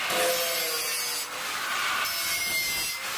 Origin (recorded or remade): recorded